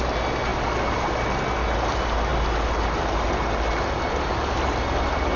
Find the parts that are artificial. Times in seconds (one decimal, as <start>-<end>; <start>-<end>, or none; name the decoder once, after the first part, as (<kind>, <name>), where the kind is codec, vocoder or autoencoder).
none